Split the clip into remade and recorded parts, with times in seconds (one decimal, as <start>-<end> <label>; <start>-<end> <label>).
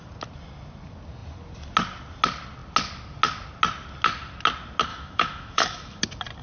0.0-4.9 recorded; 4.9-6.0 remade; 6.0-6.4 recorded